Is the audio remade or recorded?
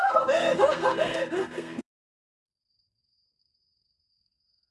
remade